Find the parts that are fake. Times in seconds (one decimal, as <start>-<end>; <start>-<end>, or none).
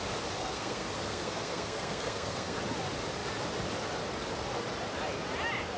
0.4-2.6